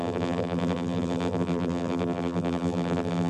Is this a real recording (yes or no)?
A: no